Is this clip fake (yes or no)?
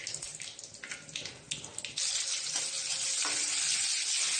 no